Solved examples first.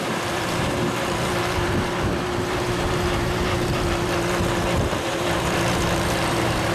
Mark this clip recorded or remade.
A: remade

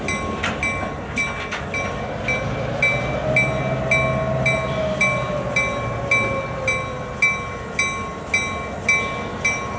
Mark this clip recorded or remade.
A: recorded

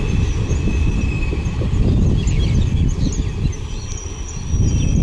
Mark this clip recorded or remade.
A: recorded